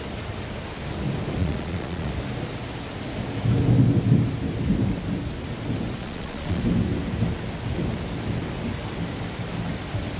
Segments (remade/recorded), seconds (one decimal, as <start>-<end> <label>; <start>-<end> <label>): 0.0-1.4 recorded; 1.4-2.1 remade; 2.1-6.0 recorded; 6.0-6.6 remade; 6.6-10.2 recorded